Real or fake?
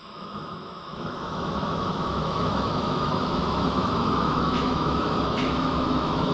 fake